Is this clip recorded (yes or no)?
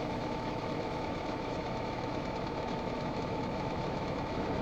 no